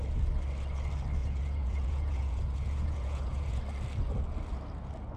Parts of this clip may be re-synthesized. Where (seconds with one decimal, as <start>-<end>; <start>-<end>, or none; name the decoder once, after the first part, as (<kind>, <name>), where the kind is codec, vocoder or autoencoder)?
1.2-3.6 (vocoder, Vocos)